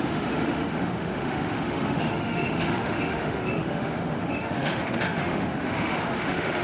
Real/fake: fake